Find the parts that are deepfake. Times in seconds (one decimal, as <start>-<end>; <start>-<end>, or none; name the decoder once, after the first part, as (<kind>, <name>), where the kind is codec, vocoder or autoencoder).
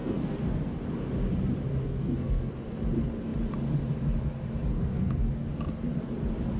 0.0-0.8 (codec, SNAC); 1.7-2.5; 4.7-5.3